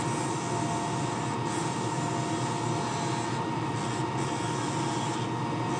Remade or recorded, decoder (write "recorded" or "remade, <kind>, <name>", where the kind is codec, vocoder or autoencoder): recorded